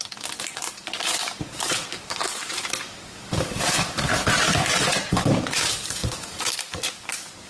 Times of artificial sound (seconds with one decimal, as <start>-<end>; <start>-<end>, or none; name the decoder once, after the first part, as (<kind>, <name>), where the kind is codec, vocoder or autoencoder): 0.0-4.1 (codec, DAC); 5.1-7.5